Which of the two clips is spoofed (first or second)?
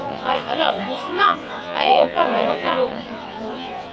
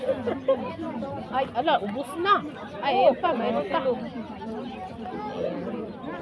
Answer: first